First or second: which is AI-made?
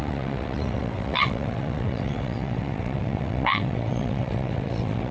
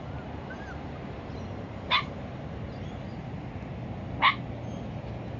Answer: first